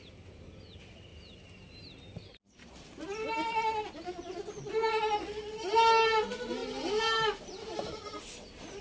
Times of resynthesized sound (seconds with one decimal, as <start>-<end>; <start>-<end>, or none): none